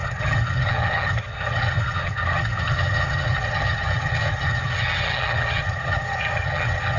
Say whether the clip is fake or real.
fake